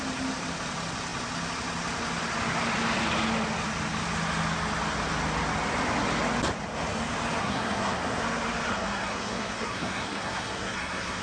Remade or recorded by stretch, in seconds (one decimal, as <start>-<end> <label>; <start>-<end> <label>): 0.0-7.4 recorded; 7.4-8.2 remade; 8.2-8.7 recorded; 8.7-11.2 remade